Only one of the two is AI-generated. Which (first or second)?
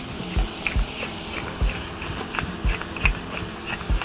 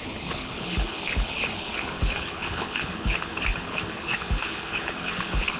second